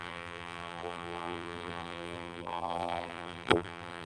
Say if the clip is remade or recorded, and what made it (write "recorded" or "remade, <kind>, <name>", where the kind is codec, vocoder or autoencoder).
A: remade, vocoder, BigVGAN v2